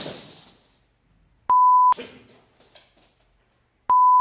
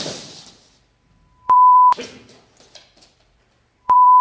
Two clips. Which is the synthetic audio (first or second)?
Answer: second